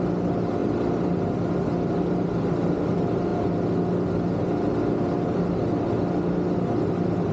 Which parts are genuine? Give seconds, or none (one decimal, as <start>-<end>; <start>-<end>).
0.0-7.3